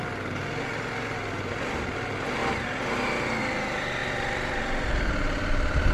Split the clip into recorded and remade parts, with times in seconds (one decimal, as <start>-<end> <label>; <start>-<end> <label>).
0.0-4.0 recorded; 4.0-5.9 remade